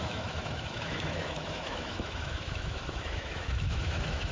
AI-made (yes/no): yes